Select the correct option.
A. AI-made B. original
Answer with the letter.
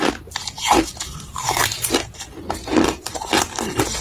B